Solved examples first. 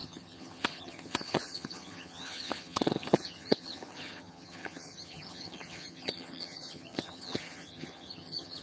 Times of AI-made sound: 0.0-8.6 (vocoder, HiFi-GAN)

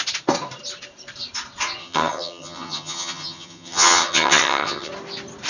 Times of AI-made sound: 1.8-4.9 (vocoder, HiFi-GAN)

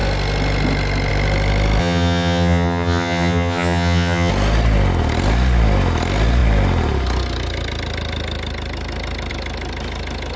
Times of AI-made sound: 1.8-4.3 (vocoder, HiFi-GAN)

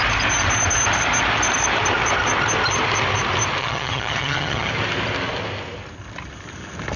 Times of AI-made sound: 3.6-4.7 (vocoder, HiFi-GAN)

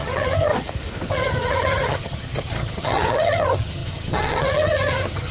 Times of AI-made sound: 0.0-0.5 (vocoder, HiFi-GAN); 1.1-5.3

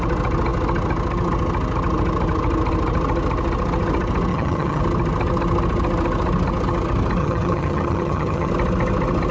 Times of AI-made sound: 4.3-4.8 (vocoder, HiFi-GAN); 7.2-8.5

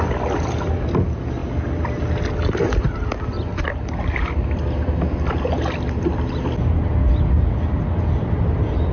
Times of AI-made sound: none

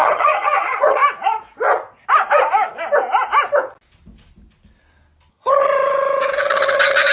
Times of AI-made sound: 0.0-1.0 (vocoder, HiFi-GAN); 5.3-5.7; 6.4-7.1